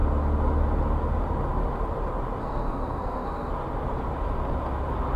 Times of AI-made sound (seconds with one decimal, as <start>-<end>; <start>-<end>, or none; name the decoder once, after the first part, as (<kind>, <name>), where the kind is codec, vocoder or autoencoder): 2.4-3.5 (codec, SNAC)